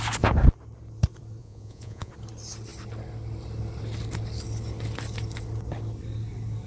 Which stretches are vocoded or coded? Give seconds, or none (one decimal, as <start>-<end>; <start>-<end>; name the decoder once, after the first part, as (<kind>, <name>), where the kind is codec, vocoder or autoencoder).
1.4-2.1 (vocoder, Vocos)